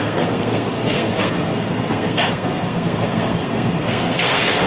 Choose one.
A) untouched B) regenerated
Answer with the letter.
B